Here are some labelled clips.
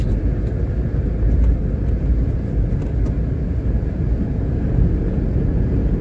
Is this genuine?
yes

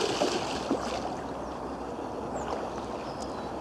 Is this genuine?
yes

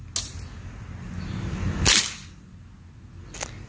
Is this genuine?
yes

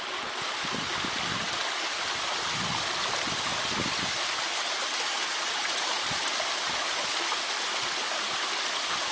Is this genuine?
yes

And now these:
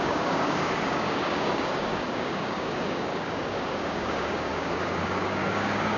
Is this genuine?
no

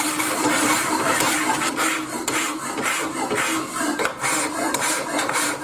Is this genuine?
no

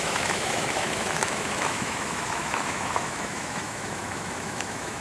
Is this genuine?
no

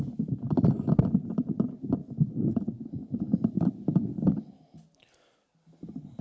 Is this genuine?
yes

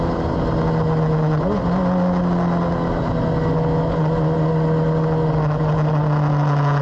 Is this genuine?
yes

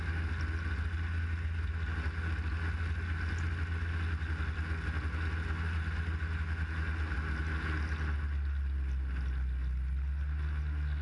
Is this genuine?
yes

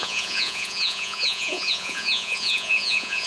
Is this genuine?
no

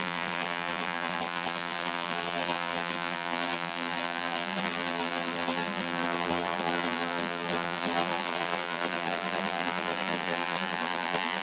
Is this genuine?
no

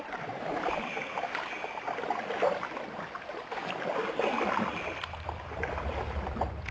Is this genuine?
yes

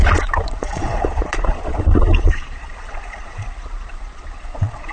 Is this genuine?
no